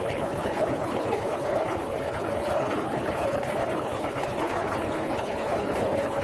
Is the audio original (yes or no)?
no